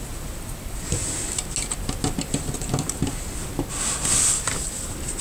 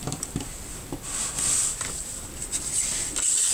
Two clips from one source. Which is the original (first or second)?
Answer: first